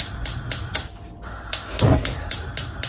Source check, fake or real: real